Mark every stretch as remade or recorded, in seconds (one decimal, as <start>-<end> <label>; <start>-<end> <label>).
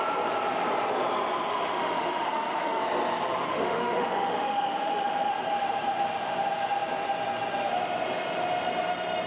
0.0-1.5 recorded; 1.5-2.8 remade; 2.8-3.5 recorded; 3.5-5.3 remade; 5.3-9.3 recorded